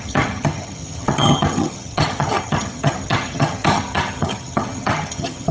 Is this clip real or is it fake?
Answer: fake